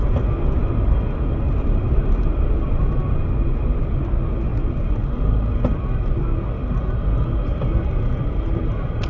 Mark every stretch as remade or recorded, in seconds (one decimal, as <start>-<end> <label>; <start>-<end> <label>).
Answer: 0.0-9.1 recorded